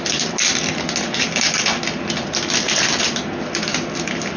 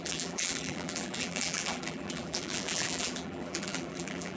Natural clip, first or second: first